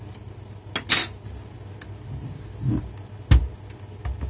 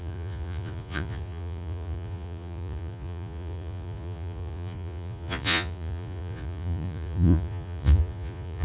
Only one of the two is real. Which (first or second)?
first